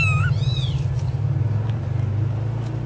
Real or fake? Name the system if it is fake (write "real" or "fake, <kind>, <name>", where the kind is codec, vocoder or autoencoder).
real